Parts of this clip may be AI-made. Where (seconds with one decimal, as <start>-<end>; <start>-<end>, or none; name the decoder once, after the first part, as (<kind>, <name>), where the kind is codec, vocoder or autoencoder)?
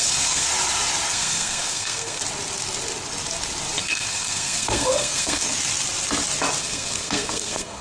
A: 0.0-0.5 (codec, SNAC); 1.1-2.2; 3.8-5.5; 6.6-7.8